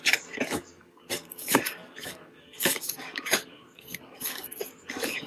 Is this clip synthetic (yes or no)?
yes